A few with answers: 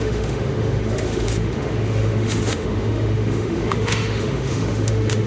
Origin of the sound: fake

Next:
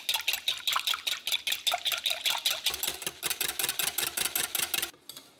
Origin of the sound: real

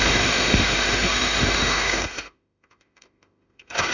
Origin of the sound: fake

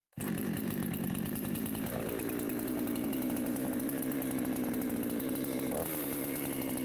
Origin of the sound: fake